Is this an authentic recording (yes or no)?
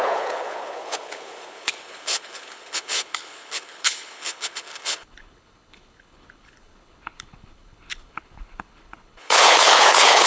no